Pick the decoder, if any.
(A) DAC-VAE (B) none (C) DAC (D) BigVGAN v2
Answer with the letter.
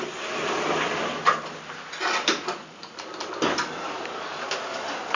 B